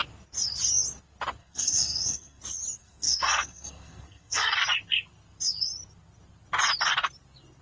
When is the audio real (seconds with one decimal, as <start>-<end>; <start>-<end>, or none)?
0.0-1.4; 2.4-2.8; 4.6-7.6

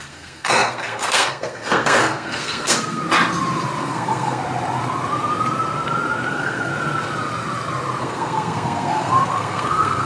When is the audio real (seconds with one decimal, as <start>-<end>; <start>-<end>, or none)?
3.0-3.8; 4.4-6.3; 6.7-8.0

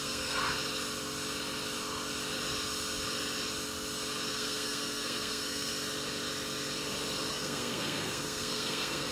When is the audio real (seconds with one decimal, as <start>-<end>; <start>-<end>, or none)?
0.4-4.3; 5.7-7.3

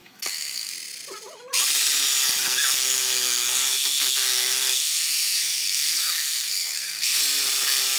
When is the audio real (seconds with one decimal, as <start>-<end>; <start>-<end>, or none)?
0.7-2.4; 7.2-8.0

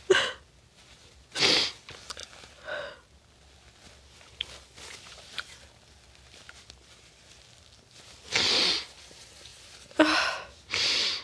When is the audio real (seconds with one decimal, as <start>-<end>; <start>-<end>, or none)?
0.0-11.2

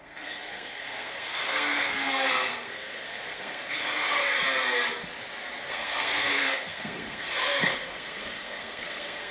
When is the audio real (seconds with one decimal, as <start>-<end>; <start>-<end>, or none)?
4.3-5.7

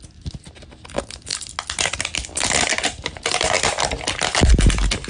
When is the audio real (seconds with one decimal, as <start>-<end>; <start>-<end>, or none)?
0.0-5.1

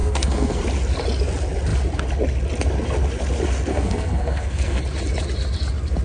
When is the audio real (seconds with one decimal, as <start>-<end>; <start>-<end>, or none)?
0.6-3.7; 4.8-6.0